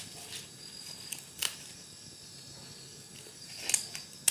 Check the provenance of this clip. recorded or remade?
recorded